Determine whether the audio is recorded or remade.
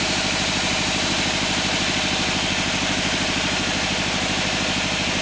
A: recorded